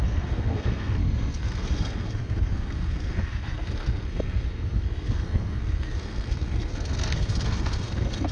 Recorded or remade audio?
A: remade